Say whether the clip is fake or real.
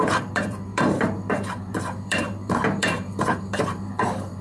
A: fake